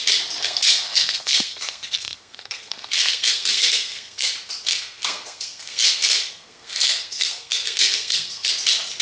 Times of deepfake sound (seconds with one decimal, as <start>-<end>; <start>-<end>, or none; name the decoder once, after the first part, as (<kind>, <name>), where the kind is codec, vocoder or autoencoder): 0.4-4.3 (codec, SNAC); 4.7-8.5